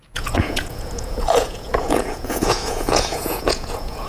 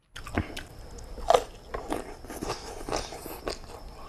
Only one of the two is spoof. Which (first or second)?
first